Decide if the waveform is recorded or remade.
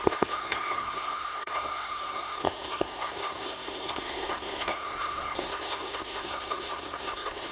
remade